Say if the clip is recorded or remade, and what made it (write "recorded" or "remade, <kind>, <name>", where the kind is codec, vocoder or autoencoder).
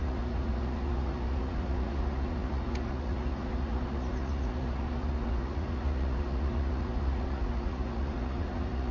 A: remade, vocoder, Vocos